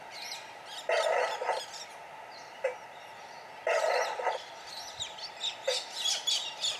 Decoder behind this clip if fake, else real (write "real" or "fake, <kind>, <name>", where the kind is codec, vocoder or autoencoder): real